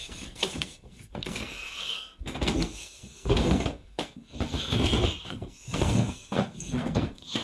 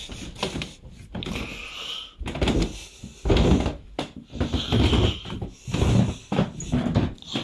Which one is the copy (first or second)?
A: first